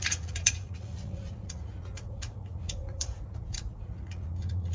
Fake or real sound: fake